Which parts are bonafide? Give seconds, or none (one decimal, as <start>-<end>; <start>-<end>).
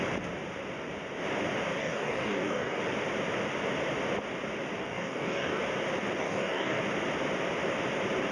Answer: 0.0-1.8; 2.8-4.8; 5.6-6.2; 6.8-8.3